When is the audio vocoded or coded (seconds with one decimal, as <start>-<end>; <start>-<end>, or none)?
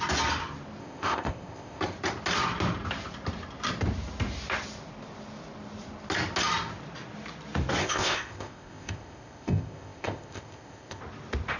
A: 0.8-1.8; 7.8-11.0